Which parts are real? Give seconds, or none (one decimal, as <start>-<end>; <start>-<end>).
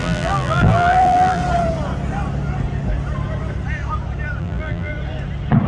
1.4-4.4; 4.9-5.7